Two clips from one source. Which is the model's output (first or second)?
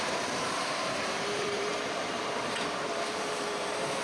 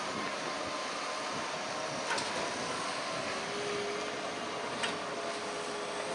first